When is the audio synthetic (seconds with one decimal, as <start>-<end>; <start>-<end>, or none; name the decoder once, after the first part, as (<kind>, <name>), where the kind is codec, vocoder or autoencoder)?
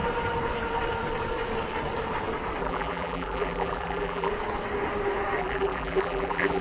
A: 2.6-4.3 (vocoder, BigVGAN v2); 5.4-6.6